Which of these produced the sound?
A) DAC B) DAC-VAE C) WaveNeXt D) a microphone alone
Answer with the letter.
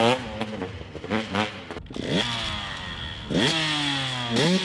D